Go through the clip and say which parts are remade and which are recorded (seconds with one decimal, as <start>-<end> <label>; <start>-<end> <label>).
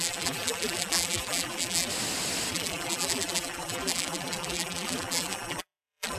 0.0-1.9 remade; 1.9-2.5 recorded; 2.5-6.2 remade